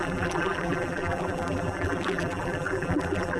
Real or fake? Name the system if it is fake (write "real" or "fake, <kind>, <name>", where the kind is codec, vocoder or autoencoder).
fake, vocoder, BigVGAN v2